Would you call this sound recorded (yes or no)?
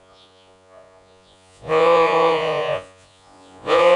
no